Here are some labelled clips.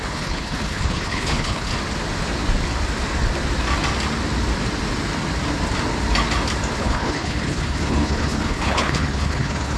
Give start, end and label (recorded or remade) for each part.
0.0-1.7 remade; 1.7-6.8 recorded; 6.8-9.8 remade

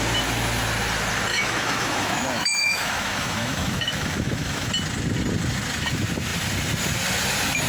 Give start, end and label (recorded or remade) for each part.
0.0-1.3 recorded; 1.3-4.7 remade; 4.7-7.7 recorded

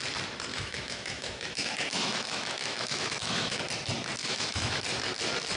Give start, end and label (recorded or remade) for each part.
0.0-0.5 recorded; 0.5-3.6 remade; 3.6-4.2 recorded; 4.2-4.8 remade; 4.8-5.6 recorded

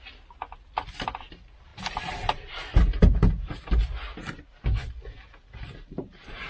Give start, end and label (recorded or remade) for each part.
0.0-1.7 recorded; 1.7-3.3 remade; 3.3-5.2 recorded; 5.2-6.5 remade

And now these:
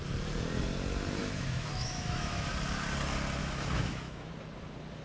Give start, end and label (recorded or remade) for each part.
0.0-1.2 recorded; 1.2-2.5 remade; 2.5-3.4 recorded; 3.4-4.3 remade; 4.3-5.0 recorded

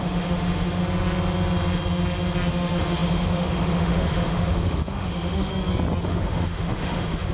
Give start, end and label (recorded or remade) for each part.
0.0-0.8 remade; 0.8-2.5 recorded; 2.5-5.5 remade; 5.5-6.0 recorded; 6.0-7.3 remade

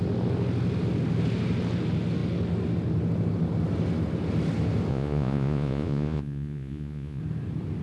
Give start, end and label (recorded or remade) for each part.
0.0-4.9 recorded; 4.9-7.2 remade; 7.2-7.8 recorded

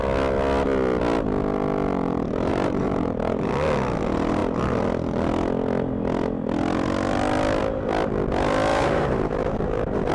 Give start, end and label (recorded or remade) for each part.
0.0-2.5 recorded; 2.5-3.5 remade; 3.5-8.7 recorded; 8.7-10.1 remade